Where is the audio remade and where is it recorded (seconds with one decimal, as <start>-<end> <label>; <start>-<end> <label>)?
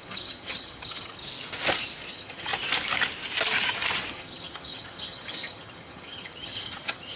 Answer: 0.0-1.2 remade; 1.2-2.1 recorded; 2.1-2.5 remade; 2.5-4.1 recorded; 4.1-7.2 remade